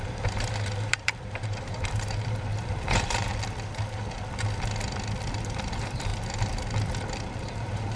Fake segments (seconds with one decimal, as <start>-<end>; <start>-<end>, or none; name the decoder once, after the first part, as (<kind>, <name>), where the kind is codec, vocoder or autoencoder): 0.0-3.3 (vocoder, BigVGAN v2); 5.3-6.1; 7.2-8.0